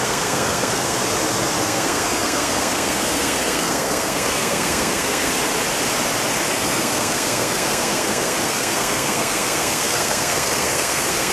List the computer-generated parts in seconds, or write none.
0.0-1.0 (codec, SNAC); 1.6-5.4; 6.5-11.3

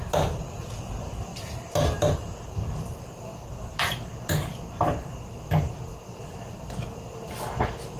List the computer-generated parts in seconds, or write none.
none

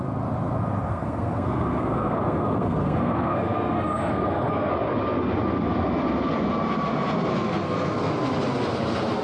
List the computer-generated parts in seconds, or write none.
0.9-4.7 (codec, SNAC); 7.3-8.1

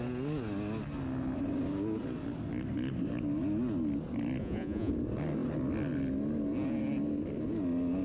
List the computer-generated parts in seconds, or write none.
4.4-4.9 (vocoder, Vocos)

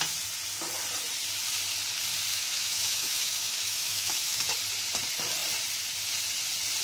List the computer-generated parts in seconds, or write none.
2.3-4.4 (autoencoder, DAC-VAE)